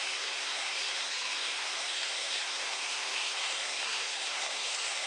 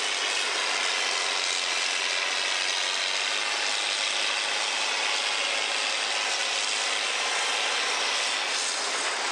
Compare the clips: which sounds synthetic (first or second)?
first